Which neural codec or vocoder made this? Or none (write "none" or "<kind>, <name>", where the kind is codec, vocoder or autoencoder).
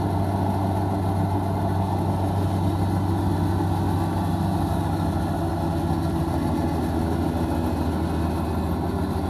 none